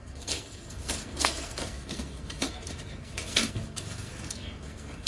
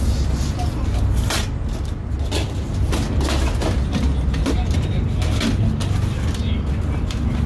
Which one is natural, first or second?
second